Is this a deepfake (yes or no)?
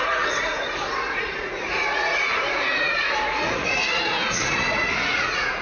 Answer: yes